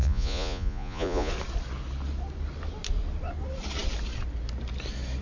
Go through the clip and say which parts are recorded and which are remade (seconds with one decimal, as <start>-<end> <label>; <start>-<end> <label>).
0.0-1.3 remade; 1.3-5.2 recorded